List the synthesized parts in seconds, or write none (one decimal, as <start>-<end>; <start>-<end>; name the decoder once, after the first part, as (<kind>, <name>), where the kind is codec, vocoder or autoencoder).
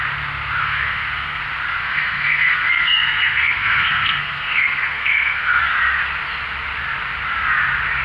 0.6-1.4 (codec, SNAC); 1.8-5.6